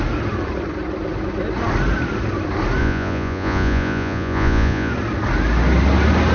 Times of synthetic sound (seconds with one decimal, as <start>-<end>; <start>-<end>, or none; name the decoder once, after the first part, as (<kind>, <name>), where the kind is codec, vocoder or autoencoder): 2.8-4.9 (vocoder, Vocos)